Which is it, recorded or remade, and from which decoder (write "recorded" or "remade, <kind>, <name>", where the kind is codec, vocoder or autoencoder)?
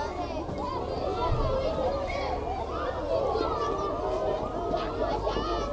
recorded